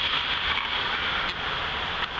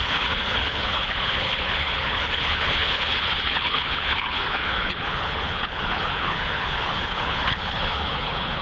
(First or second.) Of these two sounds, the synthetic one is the second